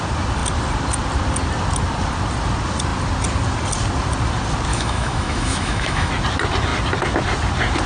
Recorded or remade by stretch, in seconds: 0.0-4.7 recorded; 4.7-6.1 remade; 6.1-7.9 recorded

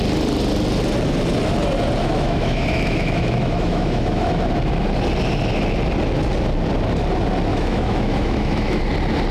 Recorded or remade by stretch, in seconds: 0.0-2.0 recorded; 2.0-4.4 remade; 4.4-7.5 recorded; 7.5-8.8 remade; 8.8-9.3 recorded

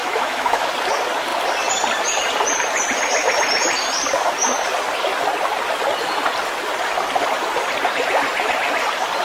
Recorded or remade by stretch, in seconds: 0.0-0.7 remade; 0.7-9.2 recorded

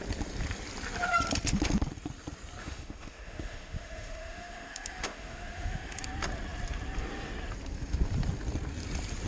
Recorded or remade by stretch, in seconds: 0.0-2.6 recorded; 2.6-6.0 remade; 6.0-9.3 recorded